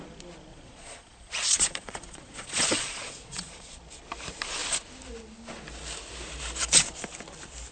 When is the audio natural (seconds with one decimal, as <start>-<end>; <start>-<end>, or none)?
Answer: 0.0-0.5; 3.8-7.7